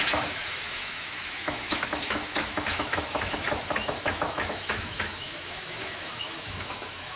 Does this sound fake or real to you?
fake